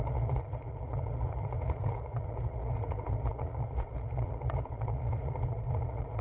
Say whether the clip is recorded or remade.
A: remade